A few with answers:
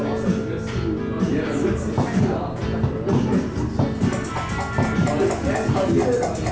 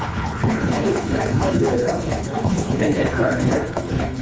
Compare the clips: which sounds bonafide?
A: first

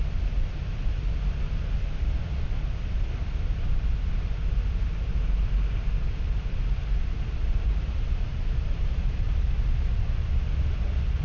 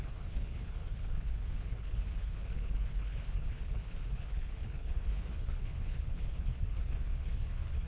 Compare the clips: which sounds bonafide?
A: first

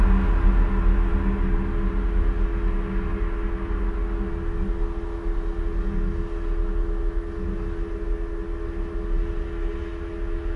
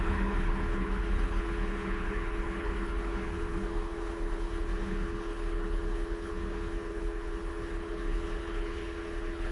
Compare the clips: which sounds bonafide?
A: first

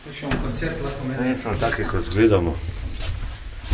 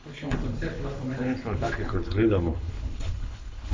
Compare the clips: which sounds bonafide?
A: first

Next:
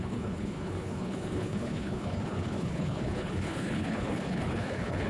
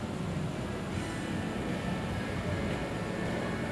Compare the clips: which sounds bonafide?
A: second